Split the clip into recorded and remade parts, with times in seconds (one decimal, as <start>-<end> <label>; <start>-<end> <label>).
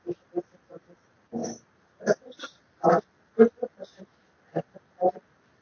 0.0-5.6 recorded